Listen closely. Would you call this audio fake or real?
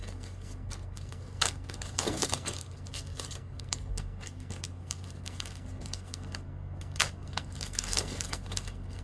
fake